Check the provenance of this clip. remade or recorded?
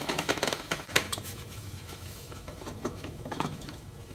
remade